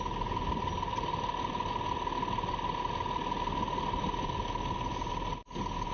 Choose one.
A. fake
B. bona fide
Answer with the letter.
B